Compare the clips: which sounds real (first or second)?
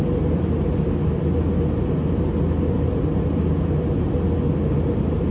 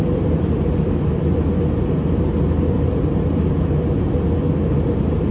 first